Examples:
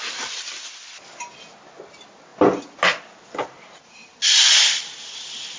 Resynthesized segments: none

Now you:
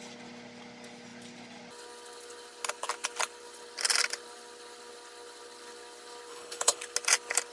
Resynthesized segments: 6.3-6.8 (codec, HILCodec)

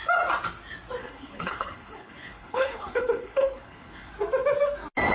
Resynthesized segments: 1.0-4.1 (codec, HILCodec)